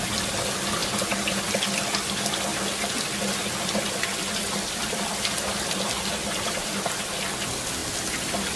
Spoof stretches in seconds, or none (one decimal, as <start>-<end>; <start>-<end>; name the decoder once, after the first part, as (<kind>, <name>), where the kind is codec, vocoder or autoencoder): 2.5-6.8 (vocoder, BigVGAN v2); 7.8-8.6